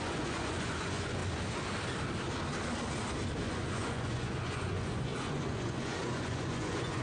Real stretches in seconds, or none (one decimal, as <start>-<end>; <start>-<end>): 1.2-3.4